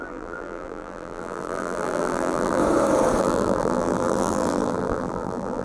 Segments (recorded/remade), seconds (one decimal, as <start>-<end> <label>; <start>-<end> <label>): 0.0-2.6 remade; 2.6-3.2 recorded; 3.2-5.6 remade